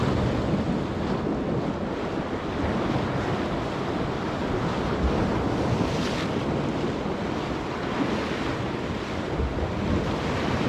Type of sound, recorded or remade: recorded